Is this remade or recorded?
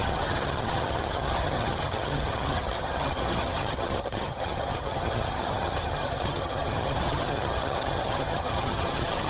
remade